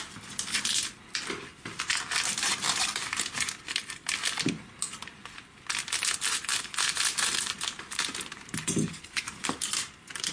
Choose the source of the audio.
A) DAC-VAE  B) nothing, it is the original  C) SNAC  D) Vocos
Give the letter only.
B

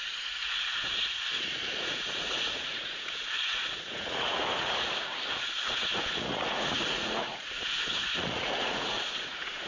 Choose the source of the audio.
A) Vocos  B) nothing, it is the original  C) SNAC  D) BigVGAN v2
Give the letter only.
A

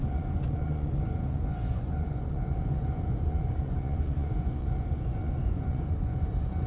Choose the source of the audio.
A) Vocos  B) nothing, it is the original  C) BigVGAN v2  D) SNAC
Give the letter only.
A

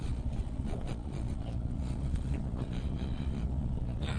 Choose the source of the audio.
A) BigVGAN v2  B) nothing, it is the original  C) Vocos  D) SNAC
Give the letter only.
C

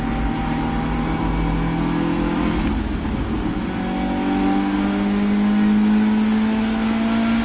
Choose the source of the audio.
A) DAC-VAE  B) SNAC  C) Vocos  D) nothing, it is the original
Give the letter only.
D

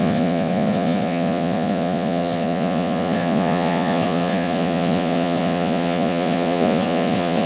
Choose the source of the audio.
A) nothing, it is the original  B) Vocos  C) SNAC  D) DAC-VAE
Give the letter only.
B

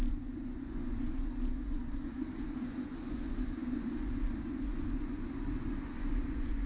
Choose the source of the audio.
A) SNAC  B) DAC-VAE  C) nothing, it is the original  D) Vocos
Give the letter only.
D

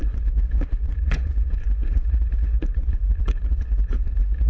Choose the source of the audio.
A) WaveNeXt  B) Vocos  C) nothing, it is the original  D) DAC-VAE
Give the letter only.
B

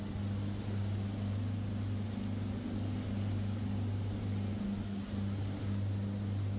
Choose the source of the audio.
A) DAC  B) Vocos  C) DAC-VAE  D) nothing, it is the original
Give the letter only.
D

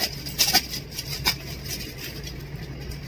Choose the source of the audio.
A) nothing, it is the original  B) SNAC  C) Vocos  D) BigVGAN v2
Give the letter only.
A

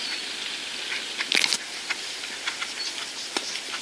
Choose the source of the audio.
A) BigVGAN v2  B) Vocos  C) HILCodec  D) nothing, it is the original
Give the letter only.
D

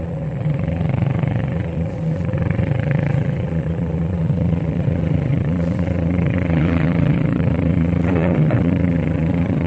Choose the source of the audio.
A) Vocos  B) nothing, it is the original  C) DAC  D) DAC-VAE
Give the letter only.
A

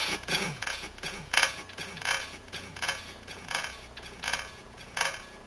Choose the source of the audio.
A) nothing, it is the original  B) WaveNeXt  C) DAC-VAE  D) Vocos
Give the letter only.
D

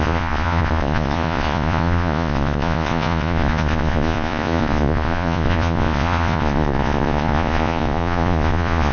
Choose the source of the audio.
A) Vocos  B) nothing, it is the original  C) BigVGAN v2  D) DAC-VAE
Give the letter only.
A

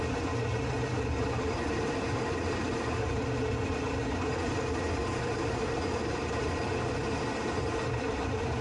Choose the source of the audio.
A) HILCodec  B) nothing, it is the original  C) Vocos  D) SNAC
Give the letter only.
B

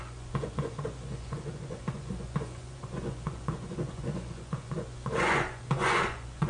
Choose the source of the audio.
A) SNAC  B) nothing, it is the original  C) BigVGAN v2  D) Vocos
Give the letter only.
D